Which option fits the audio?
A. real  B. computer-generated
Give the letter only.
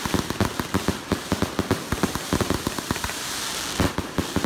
A